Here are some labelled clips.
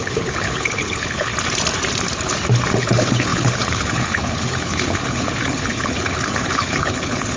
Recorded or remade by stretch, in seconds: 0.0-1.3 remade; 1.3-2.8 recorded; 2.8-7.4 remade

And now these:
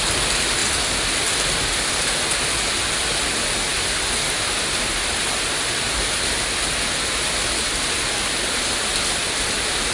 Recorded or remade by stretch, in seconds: 0.0-9.9 recorded

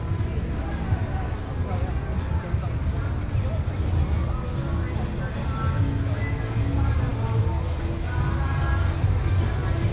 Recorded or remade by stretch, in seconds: 0.0-9.9 recorded

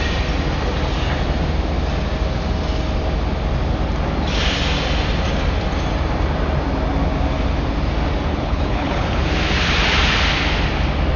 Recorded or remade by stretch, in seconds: 0.0-8.3 recorded; 8.3-9.2 remade; 9.2-11.2 recorded

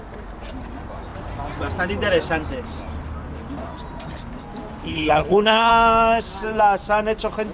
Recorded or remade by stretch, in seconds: 0.0-4.9 recorded; 4.9-5.7 remade; 5.7-7.5 recorded

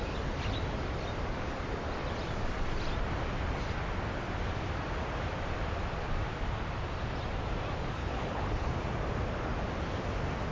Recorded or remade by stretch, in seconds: 0.0-8.0 recorded; 8.0-8.7 remade; 8.7-10.5 recorded